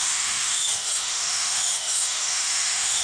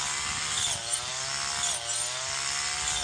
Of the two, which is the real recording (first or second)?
second